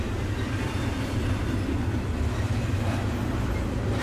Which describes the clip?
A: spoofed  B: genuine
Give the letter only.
B